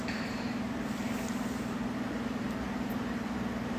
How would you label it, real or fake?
fake